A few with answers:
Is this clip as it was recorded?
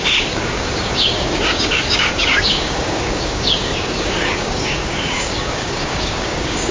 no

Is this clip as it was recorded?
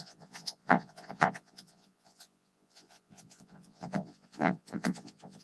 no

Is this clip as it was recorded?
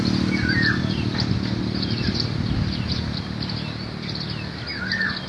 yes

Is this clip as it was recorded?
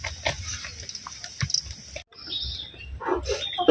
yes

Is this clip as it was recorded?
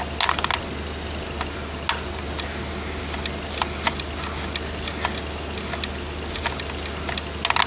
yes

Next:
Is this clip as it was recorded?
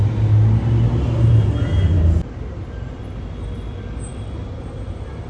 yes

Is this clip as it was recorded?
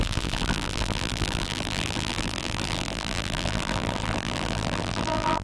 no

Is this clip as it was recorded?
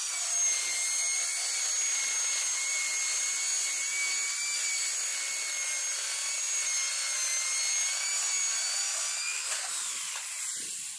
yes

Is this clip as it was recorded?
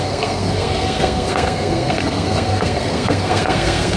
no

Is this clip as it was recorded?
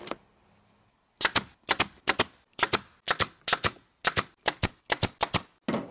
yes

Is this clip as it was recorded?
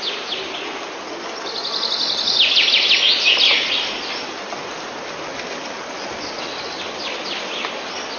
yes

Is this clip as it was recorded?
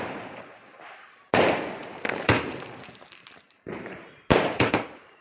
no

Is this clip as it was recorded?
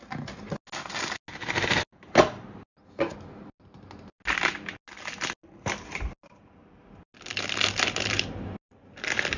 yes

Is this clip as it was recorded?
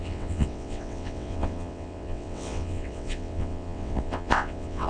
no